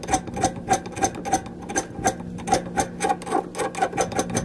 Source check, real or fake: real